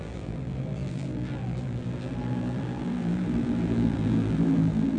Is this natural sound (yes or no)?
no